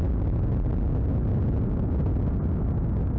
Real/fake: real